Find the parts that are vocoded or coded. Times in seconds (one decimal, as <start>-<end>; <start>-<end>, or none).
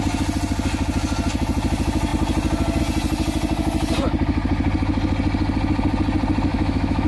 6.5-7.1